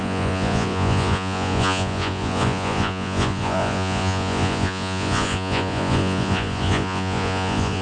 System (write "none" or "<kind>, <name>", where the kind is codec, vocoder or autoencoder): vocoder, Vocos